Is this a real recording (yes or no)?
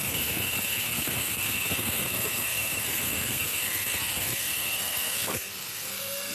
no